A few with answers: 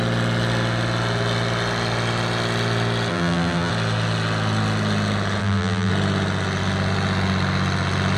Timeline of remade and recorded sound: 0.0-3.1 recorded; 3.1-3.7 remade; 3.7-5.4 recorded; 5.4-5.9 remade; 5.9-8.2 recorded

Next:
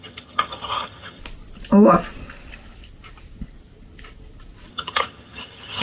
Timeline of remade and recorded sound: 0.0-1.2 remade; 1.2-4.7 recorded; 4.7-5.8 remade

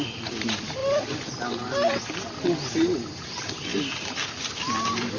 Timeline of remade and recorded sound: 0.0-0.8 remade; 0.8-2.1 recorded; 2.1-5.2 remade

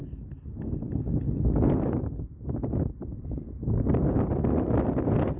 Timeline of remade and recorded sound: 0.0-5.4 recorded

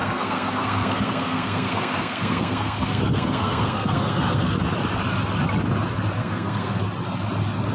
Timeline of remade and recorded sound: 0.0-4.5 remade; 4.5-6.2 recorded; 6.2-6.8 remade; 6.8-7.7 recorded

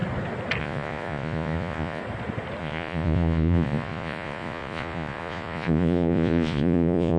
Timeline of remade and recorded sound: 0.0-0.6 recorded; 0.6-2.0 remade; 2.0-2.6 recorded; 2.6-7.2 remade

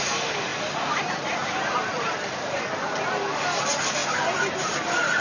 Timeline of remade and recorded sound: 0.0-0.5 recorded; 0.5-3.6 remade; 3.6-4.0 recorded; 4.0-5.2 remade

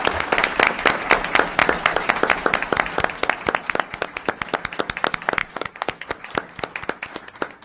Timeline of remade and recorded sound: 0.0-5.4 recorded; 5.4-6.1 remade; 6.1-7.6 recorded